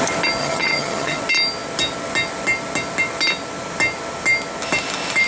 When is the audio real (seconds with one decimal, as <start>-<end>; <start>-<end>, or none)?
0.0-0.4; 1.2-5.3